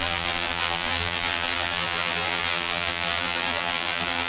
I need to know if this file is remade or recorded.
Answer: remade